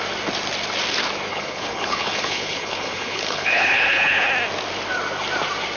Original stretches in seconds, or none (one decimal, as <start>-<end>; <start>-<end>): 0.0-1.3; 4.3-5.8